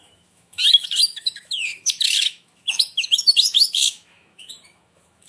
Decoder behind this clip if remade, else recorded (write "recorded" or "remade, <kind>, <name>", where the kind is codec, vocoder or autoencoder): remade, autoencoder, DAC-VAE